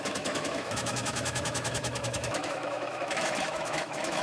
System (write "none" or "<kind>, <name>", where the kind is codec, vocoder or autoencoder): autoencoder, DAC-VAE